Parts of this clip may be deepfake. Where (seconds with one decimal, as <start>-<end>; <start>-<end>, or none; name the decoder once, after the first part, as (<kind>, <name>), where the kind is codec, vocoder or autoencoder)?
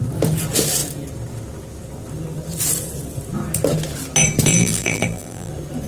4.5-5.5 (vocoder, BigVGAN v2)